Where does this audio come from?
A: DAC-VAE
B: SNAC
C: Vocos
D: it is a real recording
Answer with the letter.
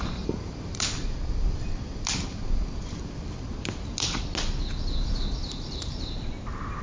D